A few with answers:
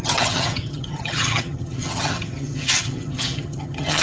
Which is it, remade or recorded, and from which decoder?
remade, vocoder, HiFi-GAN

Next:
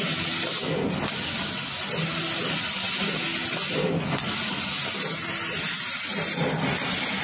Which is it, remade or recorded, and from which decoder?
recorded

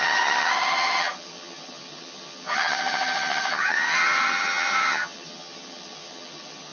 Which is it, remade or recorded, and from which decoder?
remade, vocoder, HiFi-GAN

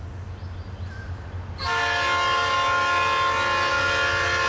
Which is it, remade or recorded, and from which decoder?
recorded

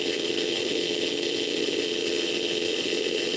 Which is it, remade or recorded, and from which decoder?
remade, vocoder, HiFi-GAN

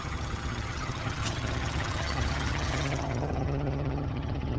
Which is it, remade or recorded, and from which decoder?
remade, vocoder, HiFi-GAN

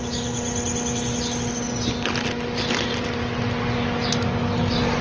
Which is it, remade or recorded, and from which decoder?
recorded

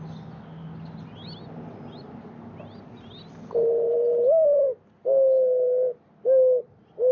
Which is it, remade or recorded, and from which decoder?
recorded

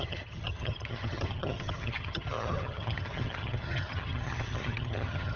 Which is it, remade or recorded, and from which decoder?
remade, vocoder, HiFi-GAN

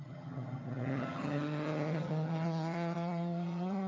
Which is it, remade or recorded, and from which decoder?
remade, vocoder, HiFi-GAN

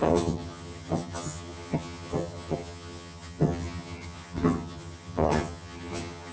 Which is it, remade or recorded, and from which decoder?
remade, vocoder, HiFi-GAN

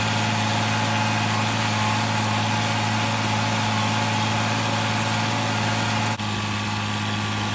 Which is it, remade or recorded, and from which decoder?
recorded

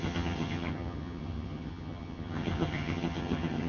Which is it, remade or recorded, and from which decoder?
remade, vocoder, HiFi-GAN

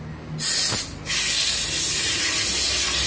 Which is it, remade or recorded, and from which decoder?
recorded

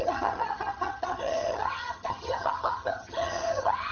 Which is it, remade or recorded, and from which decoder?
remade, vocoder, HiFi-GAN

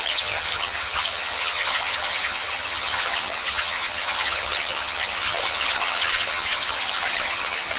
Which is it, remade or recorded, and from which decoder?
remade, vocoder, HiFi-GAN